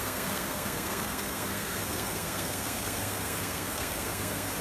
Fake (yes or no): yes